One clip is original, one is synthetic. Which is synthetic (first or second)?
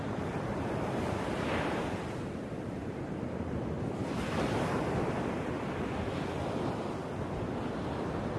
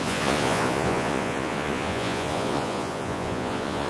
second